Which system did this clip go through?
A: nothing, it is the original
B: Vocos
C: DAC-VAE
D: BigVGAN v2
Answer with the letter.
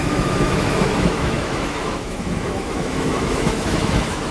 C